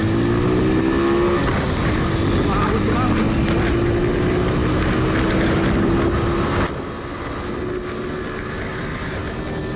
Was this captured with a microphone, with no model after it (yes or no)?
yes